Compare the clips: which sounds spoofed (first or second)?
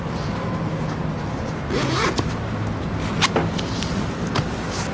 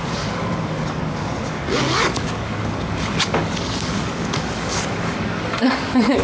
second